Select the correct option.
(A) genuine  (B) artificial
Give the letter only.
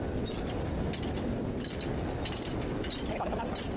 A